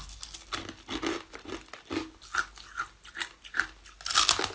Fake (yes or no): no